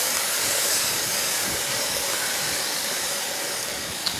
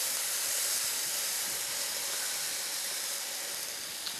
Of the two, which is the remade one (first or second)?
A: first